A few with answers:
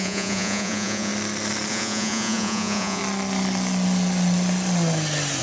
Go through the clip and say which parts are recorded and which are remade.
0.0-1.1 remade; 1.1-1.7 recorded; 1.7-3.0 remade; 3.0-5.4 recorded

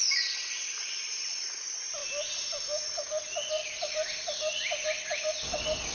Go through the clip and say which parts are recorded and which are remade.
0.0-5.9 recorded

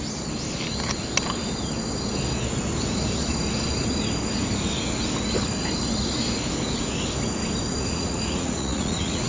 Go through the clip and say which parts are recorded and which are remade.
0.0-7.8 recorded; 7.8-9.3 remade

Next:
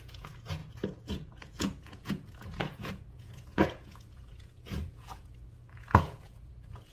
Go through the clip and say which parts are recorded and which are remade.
0.0-6.9 remade

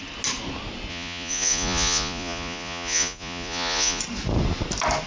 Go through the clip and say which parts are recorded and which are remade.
0.0-0.9 recorded; 0.9-4.0 remade; 4.0-5.1 recorded

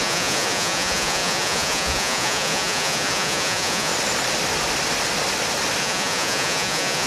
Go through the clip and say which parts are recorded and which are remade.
0.0-3.9 remade; 3.9-5.8 recorded; 5.8-7.1 remade